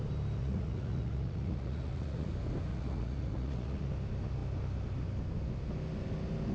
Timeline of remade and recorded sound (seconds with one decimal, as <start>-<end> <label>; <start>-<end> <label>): 0.0-0.4 recorded; 0.4-2.3 remade; 2.3-2.7 recorded; 2.7-3.9 remade; 3.9-6.5 recorded